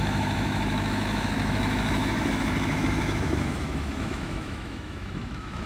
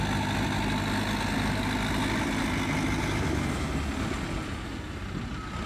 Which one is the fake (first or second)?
first